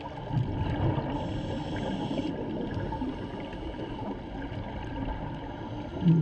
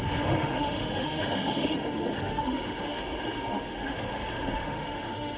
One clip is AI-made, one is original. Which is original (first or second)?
first